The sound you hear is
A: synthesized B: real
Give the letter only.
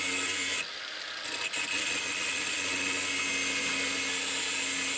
B